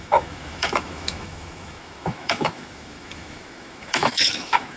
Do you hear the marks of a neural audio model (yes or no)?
yes